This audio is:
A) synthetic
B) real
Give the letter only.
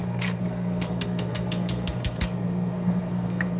A